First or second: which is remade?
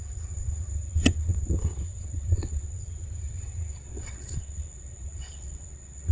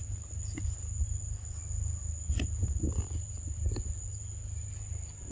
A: first